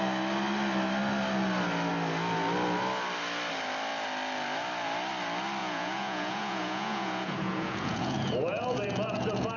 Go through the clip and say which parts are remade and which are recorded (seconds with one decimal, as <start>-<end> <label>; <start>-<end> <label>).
0.0-5.6 recorded; 5.6-9.6 remade